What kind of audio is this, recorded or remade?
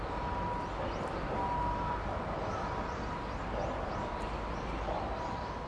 recorded